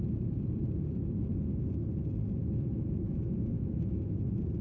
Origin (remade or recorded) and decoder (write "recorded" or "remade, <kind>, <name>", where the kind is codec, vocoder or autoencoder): remade, vocoder, Vocos